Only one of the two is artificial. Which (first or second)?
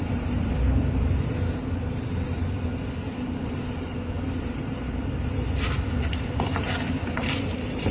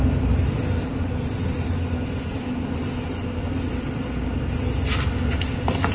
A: first